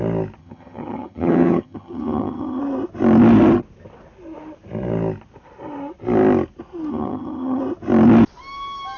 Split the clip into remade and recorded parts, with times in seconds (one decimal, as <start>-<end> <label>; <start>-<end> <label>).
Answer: 0.0-0.4 recorded; 0.4-2.6 remade; 2.6-6.9 recorded; 6.9-7.6 remade; 7.6-9.0 recorded